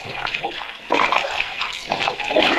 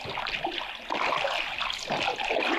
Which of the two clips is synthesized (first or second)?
first